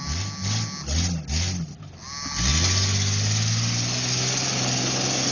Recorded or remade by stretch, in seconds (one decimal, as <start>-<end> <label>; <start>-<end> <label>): 0.0-5.3 recorded